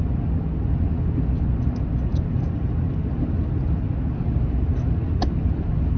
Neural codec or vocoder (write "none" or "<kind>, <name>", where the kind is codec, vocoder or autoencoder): none